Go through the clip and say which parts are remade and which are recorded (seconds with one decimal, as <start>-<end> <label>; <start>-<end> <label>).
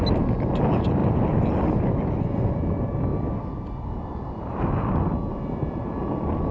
0.0-6.5 recorded